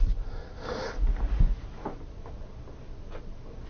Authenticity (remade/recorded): recorded